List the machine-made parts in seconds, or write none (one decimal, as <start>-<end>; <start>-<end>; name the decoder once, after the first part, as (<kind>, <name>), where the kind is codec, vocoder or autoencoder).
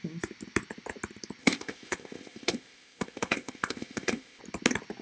1.4-4.4 (codec, ZipCodec)